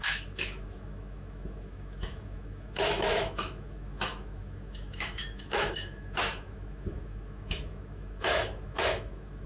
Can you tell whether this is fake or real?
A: fake